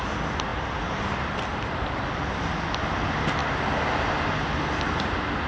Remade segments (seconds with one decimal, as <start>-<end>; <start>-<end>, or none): 0.5-2.6; 3.4-5.0